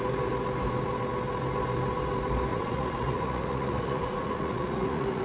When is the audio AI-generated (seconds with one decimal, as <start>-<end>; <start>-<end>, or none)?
2.5-5.2